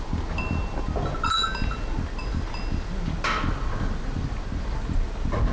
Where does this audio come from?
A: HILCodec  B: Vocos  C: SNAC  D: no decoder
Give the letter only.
D